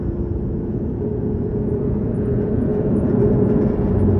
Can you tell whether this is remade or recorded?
remade